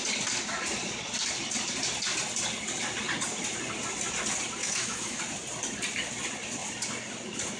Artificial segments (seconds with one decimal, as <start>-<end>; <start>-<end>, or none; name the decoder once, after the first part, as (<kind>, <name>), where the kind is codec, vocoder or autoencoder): 4.6-5.2 (autoencoder, DAC-VAE)